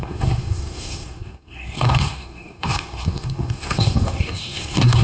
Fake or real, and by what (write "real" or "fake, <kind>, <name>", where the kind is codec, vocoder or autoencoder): fake, codec, SNAC